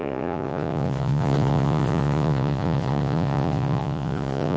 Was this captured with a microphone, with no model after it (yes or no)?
no